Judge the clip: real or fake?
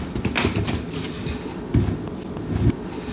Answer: real